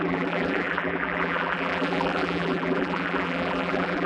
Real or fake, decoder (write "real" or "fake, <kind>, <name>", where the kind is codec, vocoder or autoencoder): fake, vocoder, BigVGAN v2